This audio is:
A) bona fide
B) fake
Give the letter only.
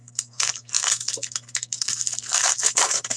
B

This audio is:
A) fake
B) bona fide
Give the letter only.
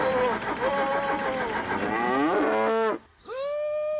B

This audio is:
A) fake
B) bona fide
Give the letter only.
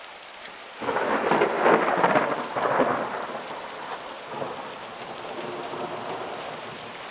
B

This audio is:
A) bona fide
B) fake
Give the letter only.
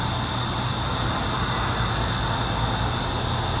A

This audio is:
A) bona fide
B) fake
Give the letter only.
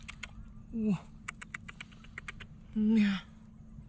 A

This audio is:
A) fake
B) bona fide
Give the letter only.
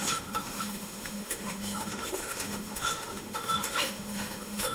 A